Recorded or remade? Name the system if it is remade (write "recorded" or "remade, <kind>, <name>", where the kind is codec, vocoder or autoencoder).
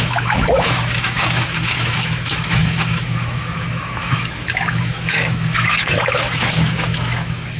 remade, autoencoder, DAC-VAE